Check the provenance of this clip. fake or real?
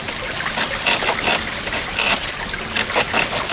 real